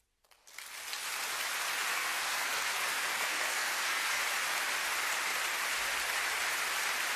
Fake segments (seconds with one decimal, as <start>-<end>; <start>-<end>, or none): 1.9-4.2